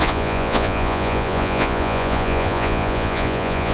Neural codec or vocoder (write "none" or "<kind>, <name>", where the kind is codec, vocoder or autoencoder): vocoder, Vocos